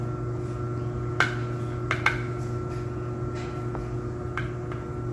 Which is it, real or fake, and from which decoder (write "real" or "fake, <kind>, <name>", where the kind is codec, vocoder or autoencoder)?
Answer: real